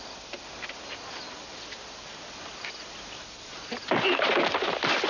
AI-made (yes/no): no